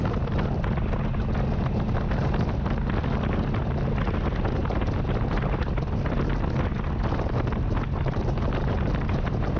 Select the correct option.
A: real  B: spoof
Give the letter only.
A